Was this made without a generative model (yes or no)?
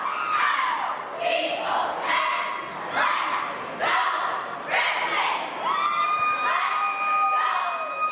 yes